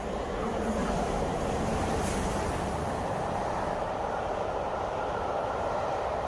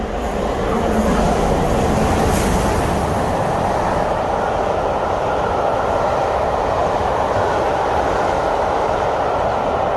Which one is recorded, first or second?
second